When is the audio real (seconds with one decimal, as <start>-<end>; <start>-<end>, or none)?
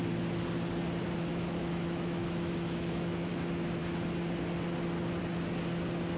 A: 0.0-1.3; 3.3-6.2